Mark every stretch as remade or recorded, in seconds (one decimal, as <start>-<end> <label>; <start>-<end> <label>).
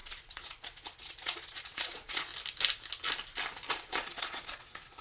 0.0-2.3 remade; 2.3-3.7 recorded; 3.7-5.0 remade